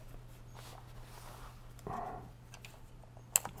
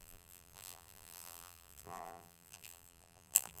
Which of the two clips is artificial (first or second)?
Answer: second